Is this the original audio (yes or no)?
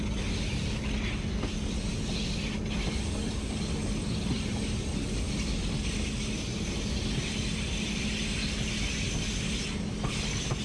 yes